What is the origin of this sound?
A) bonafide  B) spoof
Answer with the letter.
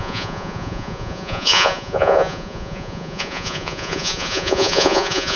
B